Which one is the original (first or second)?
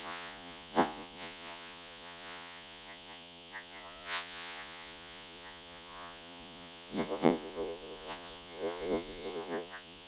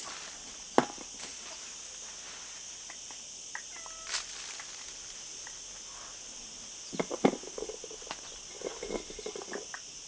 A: second